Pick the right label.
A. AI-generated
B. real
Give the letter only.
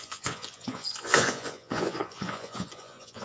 A